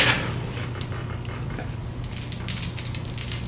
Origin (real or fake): real